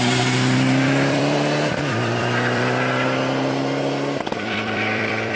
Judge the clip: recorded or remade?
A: remade